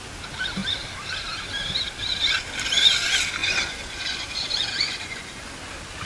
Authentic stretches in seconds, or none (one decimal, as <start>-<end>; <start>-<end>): 0.0-3.4; 5.5-6.1